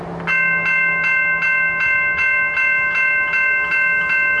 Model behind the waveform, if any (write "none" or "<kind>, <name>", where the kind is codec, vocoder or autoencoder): none